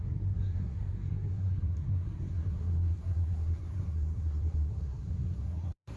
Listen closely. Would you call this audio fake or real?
fake